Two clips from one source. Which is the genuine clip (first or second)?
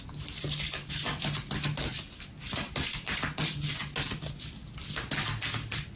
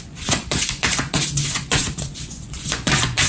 first